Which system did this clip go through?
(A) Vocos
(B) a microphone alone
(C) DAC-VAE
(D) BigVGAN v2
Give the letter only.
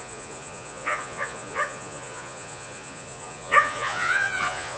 A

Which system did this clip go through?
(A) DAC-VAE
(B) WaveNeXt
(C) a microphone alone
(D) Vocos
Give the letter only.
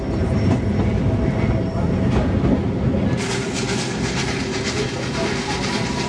C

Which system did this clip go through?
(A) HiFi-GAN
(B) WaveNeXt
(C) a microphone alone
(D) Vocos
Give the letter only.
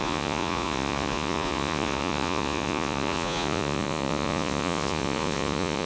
D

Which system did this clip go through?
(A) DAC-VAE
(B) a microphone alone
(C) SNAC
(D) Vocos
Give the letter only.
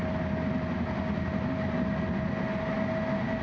B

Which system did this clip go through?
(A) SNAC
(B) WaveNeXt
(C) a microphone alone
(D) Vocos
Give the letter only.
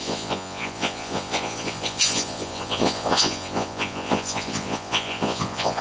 D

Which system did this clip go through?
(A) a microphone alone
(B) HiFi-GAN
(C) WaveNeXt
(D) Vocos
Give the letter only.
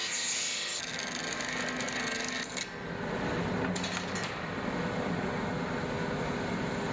A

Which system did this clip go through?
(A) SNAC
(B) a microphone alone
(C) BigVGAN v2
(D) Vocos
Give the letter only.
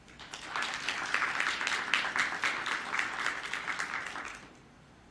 B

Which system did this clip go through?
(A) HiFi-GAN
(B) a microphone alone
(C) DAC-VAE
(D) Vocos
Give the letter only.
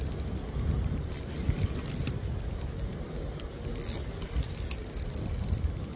B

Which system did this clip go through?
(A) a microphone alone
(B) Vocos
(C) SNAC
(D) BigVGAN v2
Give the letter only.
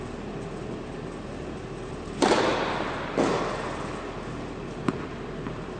A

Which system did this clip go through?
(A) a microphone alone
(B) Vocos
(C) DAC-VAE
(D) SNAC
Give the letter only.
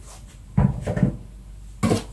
A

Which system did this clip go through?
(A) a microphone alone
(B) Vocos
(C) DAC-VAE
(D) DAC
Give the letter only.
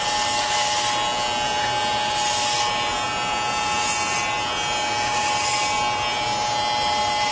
A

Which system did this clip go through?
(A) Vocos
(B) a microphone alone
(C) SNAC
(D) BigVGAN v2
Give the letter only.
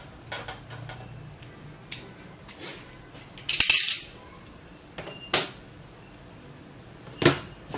B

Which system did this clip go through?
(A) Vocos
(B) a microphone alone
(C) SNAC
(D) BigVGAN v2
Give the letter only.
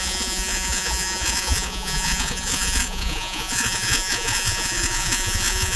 A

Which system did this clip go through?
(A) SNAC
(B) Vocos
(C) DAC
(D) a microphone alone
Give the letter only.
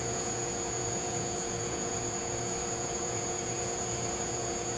B